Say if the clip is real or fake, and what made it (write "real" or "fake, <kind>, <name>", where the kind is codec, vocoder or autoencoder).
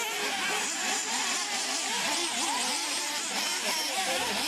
fake, vocoder, BigVGAN v2